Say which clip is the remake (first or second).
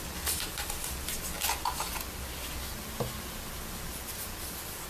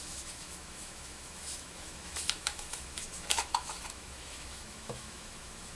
second